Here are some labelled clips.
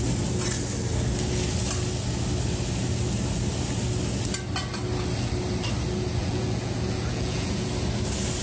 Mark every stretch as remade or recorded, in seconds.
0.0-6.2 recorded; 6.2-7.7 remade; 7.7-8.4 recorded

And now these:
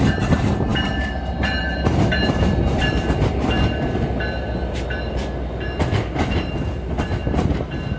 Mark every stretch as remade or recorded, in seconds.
0.0-8.0 recorded

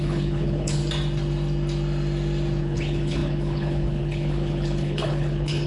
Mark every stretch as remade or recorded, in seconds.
0.0-0.8 remade; 0.8-2.6 recorded; 2.6-5.7 remade

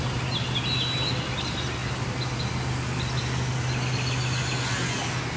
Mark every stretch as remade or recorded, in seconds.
0.0-5.4 recorded

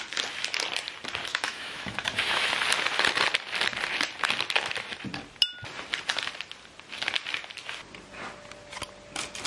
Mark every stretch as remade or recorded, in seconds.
0.0-1.3 recorded; 1.3-2.5 remade; 2.5-9.5 recorded

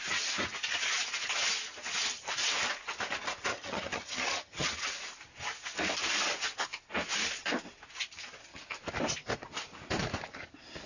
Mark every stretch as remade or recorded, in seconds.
0.0-3.5 recorded; 3.5-4.9 remade; 4.9-10.9 recorded

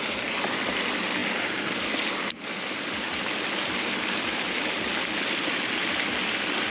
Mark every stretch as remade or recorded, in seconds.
0.0-6.7 recorded

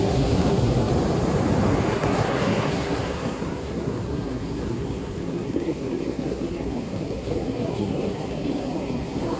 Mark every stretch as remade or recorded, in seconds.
0.0-0.9 remade; 0.9-1.9 recorded; 1.9-9.4 remade